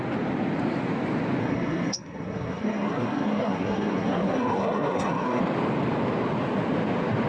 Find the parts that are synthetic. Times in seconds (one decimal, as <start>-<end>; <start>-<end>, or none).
1.4-5.4